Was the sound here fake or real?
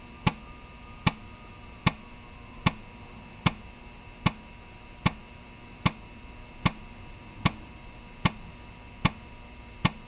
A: real